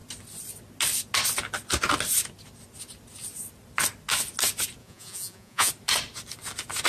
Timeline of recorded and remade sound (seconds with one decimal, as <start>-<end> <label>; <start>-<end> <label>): 0.0-4.8 recorded; 4.8-5.7 remade; 5.7-6.9 recorded